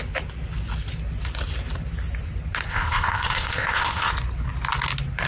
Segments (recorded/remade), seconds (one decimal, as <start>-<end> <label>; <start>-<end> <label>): 0.0-2.7 recorded; 2.7-4.1 remade; 4.1-5.3 recorded